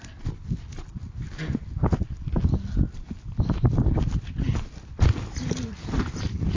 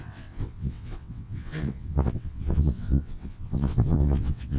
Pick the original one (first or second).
first